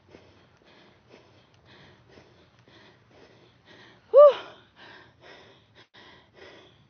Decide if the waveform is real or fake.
real